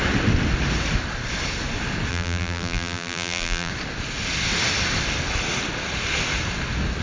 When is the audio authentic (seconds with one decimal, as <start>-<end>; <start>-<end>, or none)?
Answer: 0.0-2.1; 3.7-7.0